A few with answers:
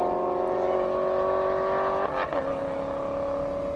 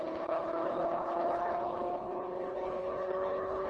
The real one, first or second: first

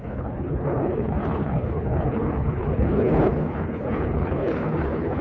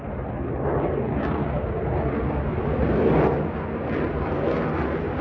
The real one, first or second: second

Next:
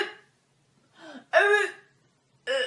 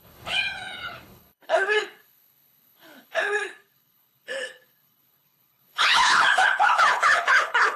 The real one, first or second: first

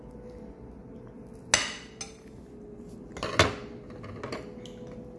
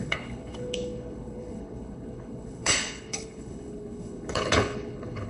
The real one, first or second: first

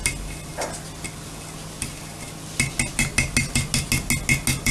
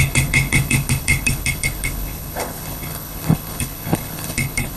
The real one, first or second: first